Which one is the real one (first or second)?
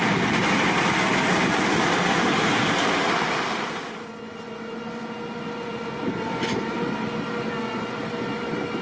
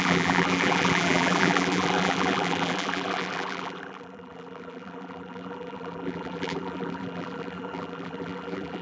first